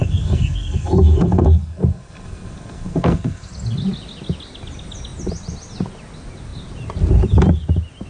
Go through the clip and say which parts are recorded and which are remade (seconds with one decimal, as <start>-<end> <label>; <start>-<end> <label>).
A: 0.0-3.5 remade; 3.5-8.1 recorded